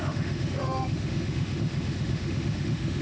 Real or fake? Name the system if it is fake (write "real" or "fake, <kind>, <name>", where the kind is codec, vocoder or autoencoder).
fake, autoencoder, DAC-VAE